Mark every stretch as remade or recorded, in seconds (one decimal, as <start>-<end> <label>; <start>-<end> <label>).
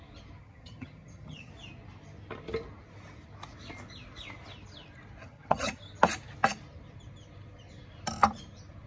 0.0-0.4 recorded; 0.4-1.5 remade; 1.5-5.2 recorded; 5.2-5.8 remade; 5.8-8.9 recorded